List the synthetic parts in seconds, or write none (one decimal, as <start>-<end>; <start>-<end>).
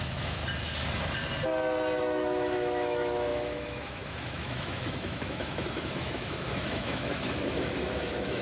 0.0-0.4; 2.0-8.4